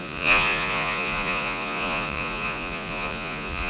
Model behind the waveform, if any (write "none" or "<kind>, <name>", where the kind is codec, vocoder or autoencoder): vocoder, Vocos